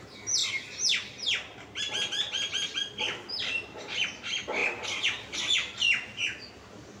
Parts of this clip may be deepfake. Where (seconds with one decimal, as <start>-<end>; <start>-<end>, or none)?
none